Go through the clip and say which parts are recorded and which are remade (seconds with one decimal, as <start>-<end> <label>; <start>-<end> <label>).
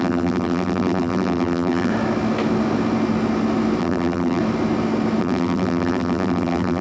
0.0-1.9 remade; 1.9-3.8 recorded; 3.8-4.4 remade; 4.4-5.2 recorded; 5.2-6.8 remade